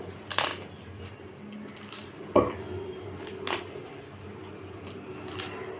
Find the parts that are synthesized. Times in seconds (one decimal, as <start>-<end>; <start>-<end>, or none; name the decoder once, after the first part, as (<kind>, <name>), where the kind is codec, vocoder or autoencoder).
none